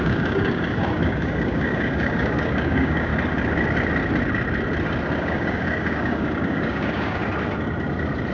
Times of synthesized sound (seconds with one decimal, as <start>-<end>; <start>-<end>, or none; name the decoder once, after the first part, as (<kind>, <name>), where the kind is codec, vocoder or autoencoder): 0.0-3.1 (codec, DAC); 5.2-7.2